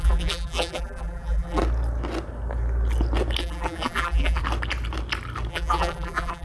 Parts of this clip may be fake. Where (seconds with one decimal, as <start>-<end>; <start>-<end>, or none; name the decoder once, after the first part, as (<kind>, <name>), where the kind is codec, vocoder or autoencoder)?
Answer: 0.0-1.6 (vocoder, BigVGAN v2); 3.4-4.4; 5.5-6.4